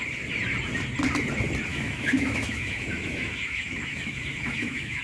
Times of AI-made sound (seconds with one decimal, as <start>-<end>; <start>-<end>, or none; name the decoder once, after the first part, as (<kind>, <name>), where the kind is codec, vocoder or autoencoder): 1.7-5.0 (autoencoder, DAC-VAE)